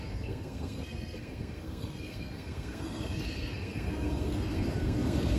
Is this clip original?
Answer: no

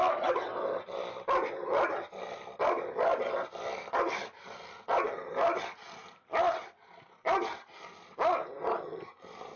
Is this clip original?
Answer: yes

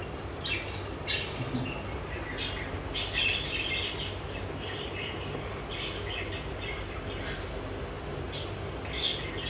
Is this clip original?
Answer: yes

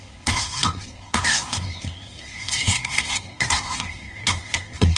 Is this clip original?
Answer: no